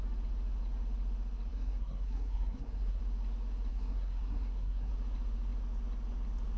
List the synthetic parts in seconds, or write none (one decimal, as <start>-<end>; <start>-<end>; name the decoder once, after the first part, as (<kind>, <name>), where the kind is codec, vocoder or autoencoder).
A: 1.5-3.0 (codec, SNAC); 3.7-4.9